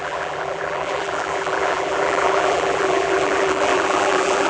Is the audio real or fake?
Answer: fake